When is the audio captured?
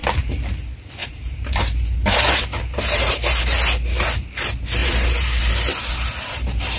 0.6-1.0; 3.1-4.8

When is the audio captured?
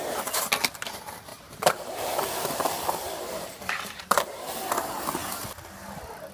0.0-1.3; 4.7-6.3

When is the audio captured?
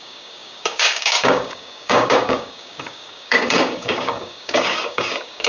none